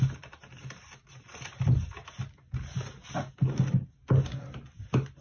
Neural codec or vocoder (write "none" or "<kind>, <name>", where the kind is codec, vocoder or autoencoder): none